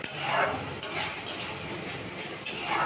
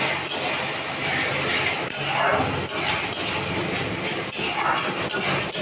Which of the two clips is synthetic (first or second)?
first